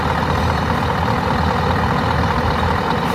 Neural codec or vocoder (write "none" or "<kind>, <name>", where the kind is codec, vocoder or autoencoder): none